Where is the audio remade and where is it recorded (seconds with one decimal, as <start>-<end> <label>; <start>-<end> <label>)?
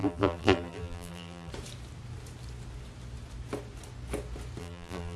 0.0-1.5 remade; 1.5-4.6 recorded; 4.6-5.2 remade